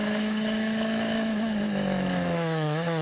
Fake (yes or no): yes